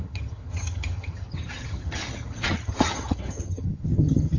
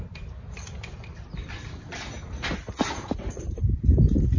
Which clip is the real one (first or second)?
second